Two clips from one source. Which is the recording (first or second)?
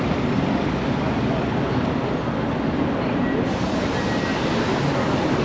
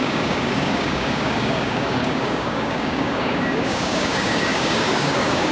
first